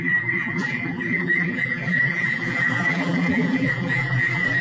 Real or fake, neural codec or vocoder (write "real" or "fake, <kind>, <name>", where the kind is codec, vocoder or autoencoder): fake, vocoder, BigVGAN v2